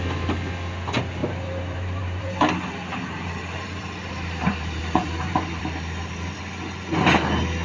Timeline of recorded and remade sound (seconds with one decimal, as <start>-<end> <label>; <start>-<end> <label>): 0.0-1.2 recorded; 1.2-5.6 remade; 5.6-7.6 recorded